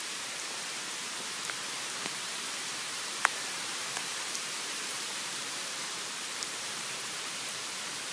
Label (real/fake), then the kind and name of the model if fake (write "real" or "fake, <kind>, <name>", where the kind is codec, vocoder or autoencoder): fake, vocoder, BigVGAN v2